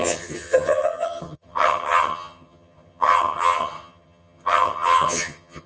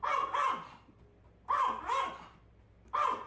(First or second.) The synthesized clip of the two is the first